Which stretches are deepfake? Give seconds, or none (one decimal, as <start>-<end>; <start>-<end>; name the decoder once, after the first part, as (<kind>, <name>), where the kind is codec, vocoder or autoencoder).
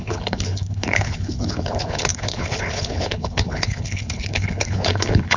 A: 0.0-5.4 (codec, HILCodec)